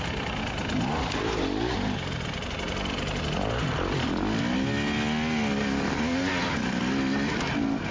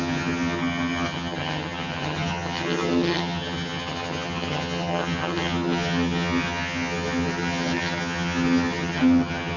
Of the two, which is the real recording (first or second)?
first